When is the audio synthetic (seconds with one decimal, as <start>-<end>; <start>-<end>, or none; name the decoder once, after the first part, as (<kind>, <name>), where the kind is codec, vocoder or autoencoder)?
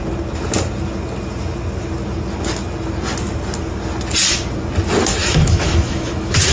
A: 5.2-6.5 (autoencoder, DAC-VAE)